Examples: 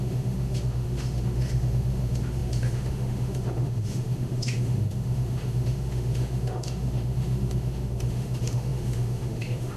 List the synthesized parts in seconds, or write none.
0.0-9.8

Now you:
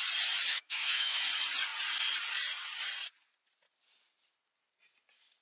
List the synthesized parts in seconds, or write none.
0.5-1.2

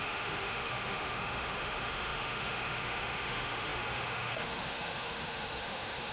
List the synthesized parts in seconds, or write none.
0.0-6.1

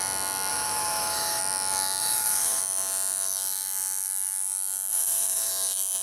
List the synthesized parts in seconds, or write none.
0.5-1.4; 2.0-2.6; 4.9-5.5